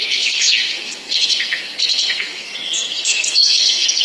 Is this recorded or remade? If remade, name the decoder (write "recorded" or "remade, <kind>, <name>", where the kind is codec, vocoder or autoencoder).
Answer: remade, codec, SNAC